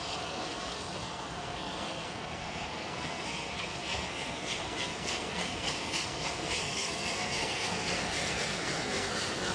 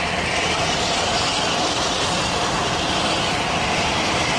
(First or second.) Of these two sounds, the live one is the second